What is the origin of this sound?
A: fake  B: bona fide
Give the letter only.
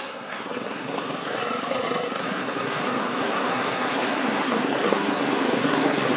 A